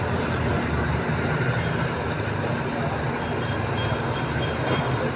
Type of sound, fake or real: real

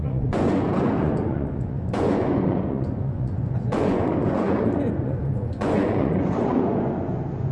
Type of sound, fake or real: fake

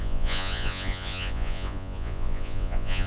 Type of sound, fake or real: fake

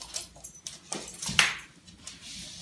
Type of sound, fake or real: real